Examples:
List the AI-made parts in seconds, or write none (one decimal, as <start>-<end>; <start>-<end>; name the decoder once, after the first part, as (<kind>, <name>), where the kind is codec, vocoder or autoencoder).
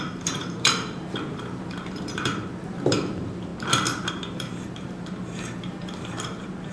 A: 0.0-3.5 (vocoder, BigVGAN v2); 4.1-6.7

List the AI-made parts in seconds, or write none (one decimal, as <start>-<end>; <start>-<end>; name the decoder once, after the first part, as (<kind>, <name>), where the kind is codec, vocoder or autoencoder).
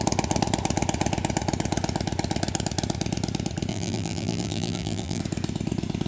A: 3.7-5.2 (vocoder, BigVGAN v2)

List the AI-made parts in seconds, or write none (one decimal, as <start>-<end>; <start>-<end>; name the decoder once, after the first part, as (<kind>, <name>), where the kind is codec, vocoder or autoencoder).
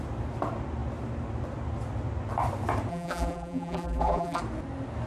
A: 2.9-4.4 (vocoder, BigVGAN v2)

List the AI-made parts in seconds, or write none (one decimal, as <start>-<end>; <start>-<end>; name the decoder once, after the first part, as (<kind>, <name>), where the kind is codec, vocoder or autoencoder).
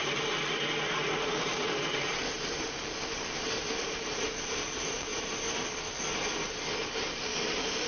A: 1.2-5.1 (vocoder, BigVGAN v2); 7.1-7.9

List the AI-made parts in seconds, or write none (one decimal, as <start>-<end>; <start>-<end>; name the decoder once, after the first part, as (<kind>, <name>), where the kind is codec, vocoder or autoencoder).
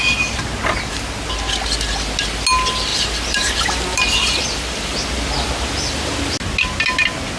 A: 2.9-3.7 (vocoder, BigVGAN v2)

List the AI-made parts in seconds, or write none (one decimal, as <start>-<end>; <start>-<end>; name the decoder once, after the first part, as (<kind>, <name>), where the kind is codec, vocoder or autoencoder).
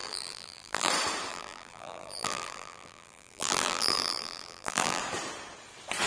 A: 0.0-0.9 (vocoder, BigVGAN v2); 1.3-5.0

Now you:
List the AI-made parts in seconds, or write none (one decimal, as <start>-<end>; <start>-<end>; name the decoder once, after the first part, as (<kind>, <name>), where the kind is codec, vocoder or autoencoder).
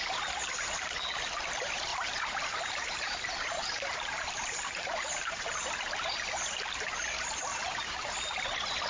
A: 1.9-5.9 (vocoder, BigVGAN v2); 7.5-8.1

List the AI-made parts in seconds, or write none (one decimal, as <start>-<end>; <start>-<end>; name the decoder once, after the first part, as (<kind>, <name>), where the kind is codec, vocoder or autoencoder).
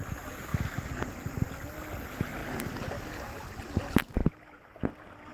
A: none